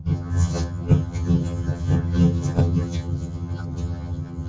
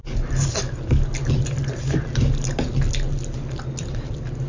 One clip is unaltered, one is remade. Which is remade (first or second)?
first